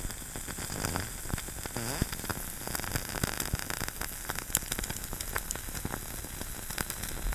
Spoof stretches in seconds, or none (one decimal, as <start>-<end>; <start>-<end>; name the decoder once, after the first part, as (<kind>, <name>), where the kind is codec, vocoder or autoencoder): none